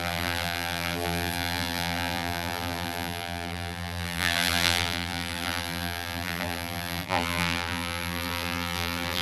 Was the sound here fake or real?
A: fake